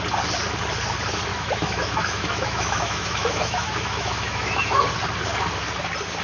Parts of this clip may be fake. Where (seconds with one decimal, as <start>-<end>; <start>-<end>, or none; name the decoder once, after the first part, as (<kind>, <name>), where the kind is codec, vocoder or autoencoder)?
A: 1.3-4.8 (autoencoder, DAC-VAE)